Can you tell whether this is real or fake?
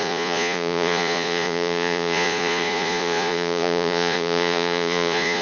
fake